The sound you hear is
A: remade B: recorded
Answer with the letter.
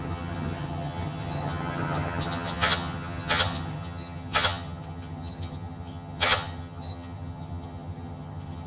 A